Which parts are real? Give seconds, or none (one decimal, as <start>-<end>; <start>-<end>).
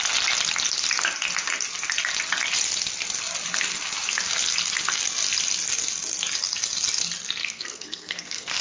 0.0-7.4